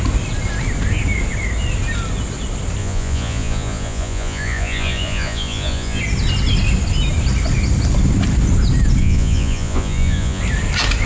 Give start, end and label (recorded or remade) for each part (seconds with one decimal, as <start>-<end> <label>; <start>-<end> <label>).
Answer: 0.0-2.8 recorded; 2.8-6.0 remade; 6.0-9.0 recorded; 9.0-10.4 remade; 10.4-11.1 recorded